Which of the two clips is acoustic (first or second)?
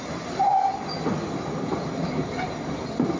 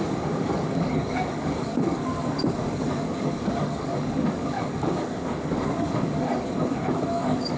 first